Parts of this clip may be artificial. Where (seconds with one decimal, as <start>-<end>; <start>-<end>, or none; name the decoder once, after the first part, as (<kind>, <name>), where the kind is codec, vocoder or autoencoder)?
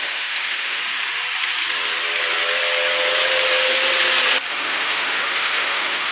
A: 0.0-0.8 (autoencoder, DAC-VAE); 4.5-6.1